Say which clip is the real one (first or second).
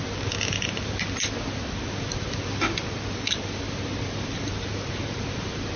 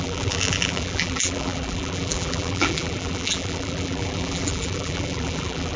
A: first